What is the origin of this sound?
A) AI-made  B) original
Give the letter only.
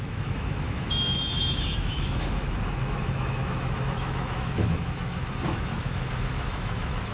A